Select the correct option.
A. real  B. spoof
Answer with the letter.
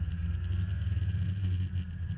A